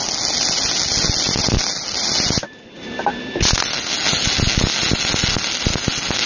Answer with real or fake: real